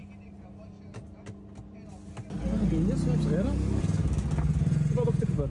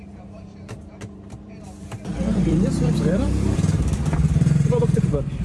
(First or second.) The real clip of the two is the first